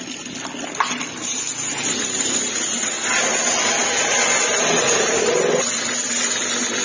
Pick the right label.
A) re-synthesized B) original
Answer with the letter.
B